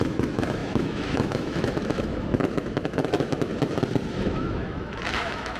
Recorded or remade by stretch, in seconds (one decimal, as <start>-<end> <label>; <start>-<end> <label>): 0.0-3.5 remade; 3.5-4.1 recorded; 4.1-5.6 remade

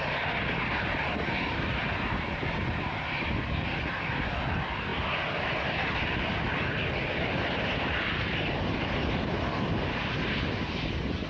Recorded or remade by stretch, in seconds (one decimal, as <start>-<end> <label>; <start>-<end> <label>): 0.0-11.3 recorded

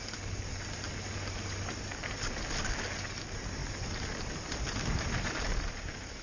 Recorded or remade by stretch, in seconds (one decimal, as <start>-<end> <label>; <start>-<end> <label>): 0.0-6.2 recorded

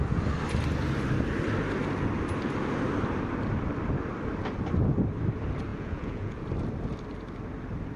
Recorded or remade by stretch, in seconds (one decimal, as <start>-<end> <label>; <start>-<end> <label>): 0.0-5.7 recorded; 5.7-6.4 remade; 6.4-8.0 recorded

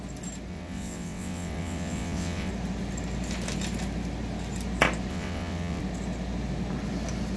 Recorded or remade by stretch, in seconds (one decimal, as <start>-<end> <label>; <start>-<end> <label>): 0.0-0.5 recorded; 0.5-2.5 remade; 2.5-5.1 recorded; 5.1-5.8 remade; 5.8-7.4 recorded

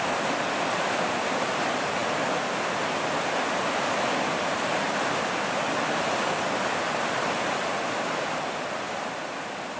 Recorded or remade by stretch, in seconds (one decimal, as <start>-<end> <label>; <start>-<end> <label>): 0.0-9.8 recorded

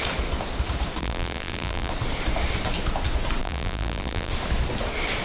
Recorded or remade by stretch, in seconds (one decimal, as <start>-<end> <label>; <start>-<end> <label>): 0.0-1.0 recorded; 1.0-1.9 remade; 1.9-3.4 recorded; 3.4-4.3 remade; 4.3-5.2 recorded

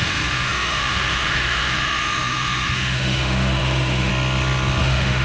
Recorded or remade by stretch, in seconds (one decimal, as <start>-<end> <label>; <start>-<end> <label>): 0.0-4.1 remade; 4.1-4.8 recorded; 4.8-5.2 remade